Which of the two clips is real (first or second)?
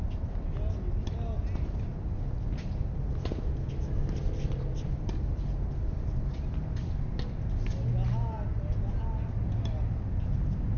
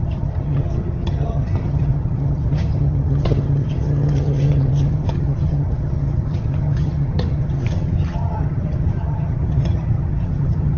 first